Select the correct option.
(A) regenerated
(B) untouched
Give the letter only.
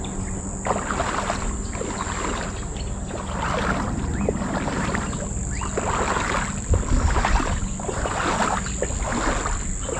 B